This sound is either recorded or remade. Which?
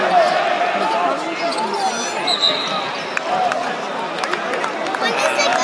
recorded